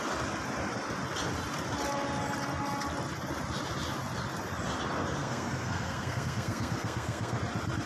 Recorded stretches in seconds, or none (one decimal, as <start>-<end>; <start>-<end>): 0.0-5.2; 7.4-7.9